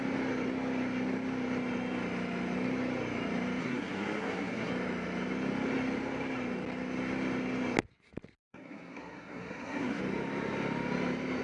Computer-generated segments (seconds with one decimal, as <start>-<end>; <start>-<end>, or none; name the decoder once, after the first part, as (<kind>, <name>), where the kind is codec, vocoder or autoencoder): 3.6-4.7 (codec, SNAC); 8.4-10.0